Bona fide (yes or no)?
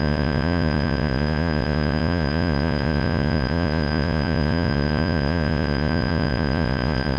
no